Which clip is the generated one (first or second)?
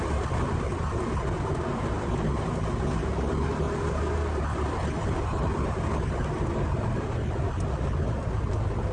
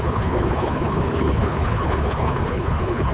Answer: second